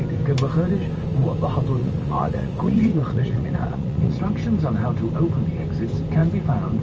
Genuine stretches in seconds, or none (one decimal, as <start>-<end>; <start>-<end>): 0.0-1.8; 4.2-6.8